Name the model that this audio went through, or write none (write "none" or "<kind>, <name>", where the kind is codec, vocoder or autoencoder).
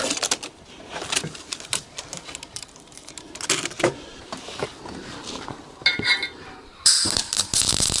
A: vocoder, BigVGAN v2